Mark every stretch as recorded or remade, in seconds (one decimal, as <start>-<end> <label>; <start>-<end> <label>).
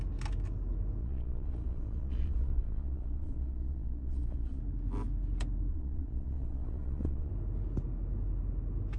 0.0-1.0 recorded; 1.0-4.6 remade; 4.6-5.7 recorded; 5.7-7.3 remade; 7.3-9.0 recorded